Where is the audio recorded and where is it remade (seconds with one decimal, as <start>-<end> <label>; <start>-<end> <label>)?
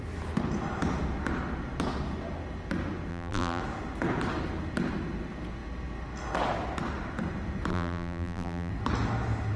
0.0-3.1 recorded; 3.1-3.6 remade; 3.6-7.7 recorded; 7.7-8.7 remade; 8.7-9.6 recorded